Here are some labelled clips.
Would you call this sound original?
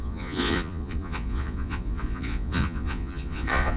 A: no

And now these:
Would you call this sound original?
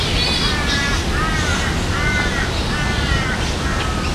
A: yes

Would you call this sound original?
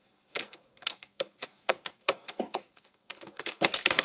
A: no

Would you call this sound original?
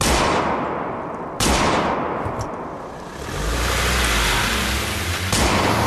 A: yes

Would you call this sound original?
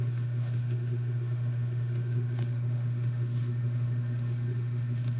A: no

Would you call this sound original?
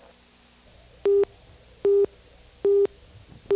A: yes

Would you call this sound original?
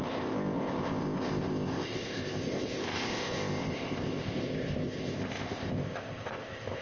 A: no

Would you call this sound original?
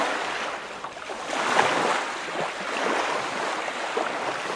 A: yes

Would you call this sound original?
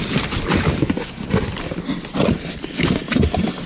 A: yes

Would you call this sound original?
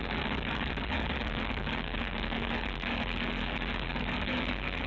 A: no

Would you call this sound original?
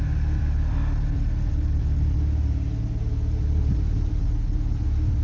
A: yes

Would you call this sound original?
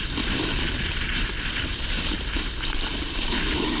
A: no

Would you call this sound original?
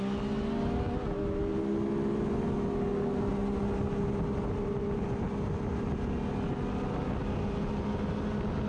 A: yes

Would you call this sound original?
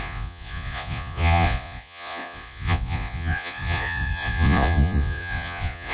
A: no